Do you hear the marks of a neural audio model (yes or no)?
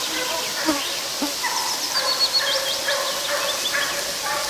no